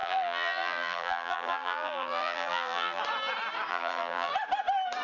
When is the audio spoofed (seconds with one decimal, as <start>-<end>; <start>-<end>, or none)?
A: 0.0-3.0; 3.7-4.3